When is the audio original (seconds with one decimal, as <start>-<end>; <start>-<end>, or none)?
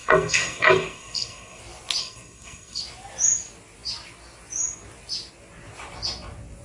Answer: 1.6-2.0; 2.8-6.6